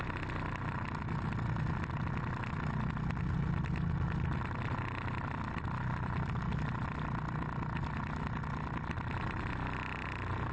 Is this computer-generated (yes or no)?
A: no